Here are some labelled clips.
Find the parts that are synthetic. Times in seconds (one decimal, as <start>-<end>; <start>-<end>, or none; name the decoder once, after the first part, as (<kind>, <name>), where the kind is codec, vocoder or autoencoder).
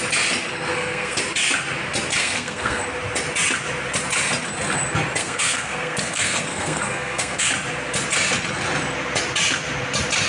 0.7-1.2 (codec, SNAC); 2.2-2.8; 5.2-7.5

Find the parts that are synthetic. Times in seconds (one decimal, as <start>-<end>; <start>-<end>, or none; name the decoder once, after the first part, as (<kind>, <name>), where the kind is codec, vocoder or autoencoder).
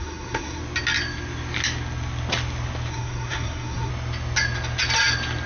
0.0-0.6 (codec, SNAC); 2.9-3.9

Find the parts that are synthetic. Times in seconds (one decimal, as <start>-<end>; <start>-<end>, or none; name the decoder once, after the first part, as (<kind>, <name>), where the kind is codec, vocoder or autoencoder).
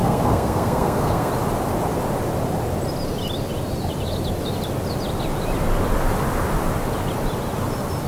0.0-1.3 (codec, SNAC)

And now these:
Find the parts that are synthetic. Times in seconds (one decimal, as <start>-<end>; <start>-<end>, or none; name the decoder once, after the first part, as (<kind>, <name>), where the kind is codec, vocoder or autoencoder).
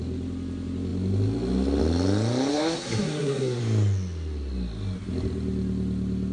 2.5-3.6 (codec, SNAC)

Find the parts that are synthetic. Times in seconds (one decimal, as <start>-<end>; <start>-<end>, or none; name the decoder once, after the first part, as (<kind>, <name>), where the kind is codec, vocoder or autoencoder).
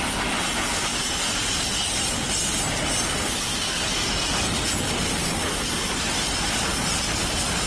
none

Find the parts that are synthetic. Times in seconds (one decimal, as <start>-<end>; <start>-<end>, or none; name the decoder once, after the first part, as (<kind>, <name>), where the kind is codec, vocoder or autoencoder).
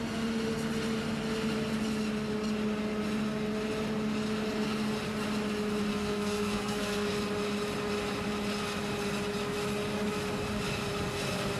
5.9-7.1 (codec, SNAC)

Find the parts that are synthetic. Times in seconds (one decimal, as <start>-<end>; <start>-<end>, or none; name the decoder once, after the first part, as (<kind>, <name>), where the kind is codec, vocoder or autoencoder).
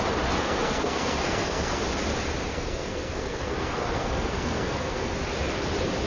0.4-1.8 (codec, SNAC); 2.5-5.1